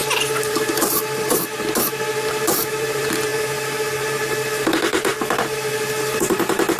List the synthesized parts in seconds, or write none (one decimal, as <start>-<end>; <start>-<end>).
0.0-6.8